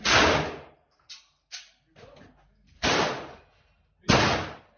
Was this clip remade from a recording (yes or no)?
no